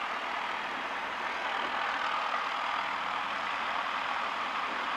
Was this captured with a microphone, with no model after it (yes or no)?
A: yes